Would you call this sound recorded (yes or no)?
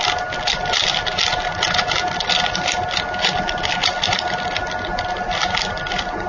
yes